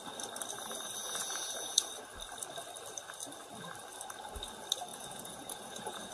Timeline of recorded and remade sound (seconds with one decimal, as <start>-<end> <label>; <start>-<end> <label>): 0.0-1.0 recorded; 1.0-1.9 remade; 1.9-4.9 recorded; 4.9-6.1 remade